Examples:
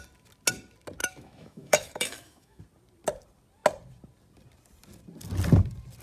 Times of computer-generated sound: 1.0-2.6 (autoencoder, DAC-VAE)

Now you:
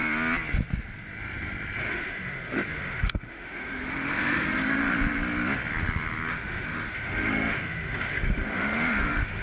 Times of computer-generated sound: 1.8-4.8 (autoencoder, DAC-VAE); 6.3-9.4

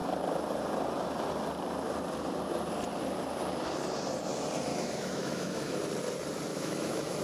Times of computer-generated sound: 4.7-5.8 (autoencoder, DAC-VAE); 6.5-7.2